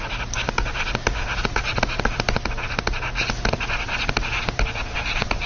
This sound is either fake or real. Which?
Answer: real